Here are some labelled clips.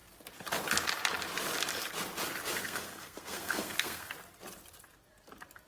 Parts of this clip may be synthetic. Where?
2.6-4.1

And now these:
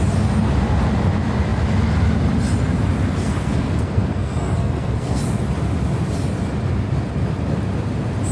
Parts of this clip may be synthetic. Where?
3.2-5.2

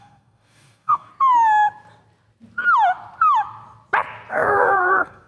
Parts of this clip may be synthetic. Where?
0.0-1.1; 4.3-5.3

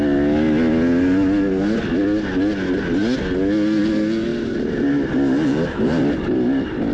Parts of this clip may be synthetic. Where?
none

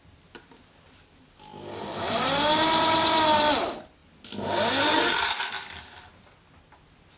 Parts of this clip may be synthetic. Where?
none

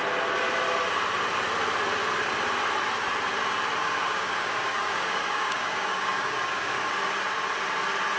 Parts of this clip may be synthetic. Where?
3.8-6.9

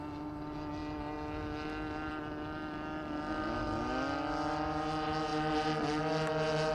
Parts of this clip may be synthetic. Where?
none

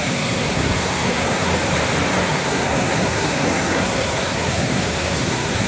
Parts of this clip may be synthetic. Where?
0.0-1.5; 2.2-5.7